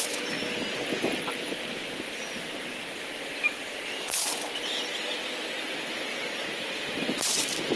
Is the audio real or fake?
real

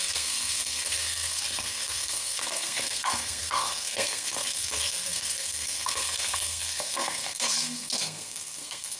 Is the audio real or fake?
fake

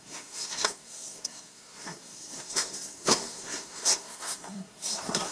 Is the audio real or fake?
fake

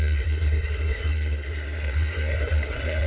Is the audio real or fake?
fake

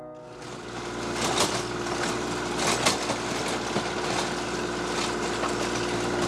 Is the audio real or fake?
real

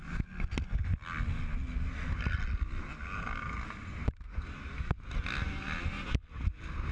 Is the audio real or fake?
real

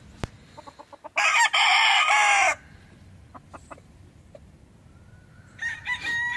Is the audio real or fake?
real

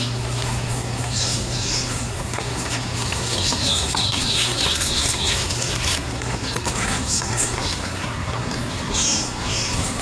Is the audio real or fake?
fake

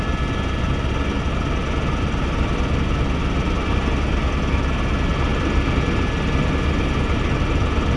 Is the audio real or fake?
real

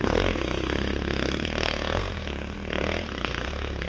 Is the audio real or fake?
fake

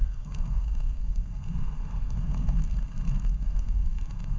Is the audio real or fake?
fake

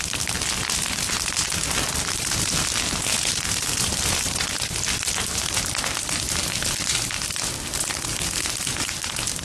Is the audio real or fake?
real